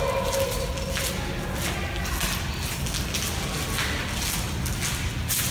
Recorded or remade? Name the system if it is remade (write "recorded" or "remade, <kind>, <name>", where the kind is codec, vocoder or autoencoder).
recorded